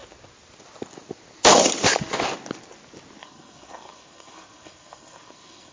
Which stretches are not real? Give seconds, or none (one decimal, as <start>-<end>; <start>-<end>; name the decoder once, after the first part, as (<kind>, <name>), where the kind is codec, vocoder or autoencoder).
3.2-5.7 (codec, SNAC)